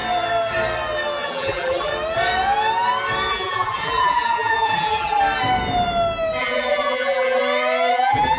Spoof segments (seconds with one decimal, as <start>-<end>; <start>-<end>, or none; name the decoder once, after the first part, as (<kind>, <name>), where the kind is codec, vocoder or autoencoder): 1.2-1.9 (vocoder, BigVGAN v2); 3.3-5.2; 6.4-7.4; 7.9-8.4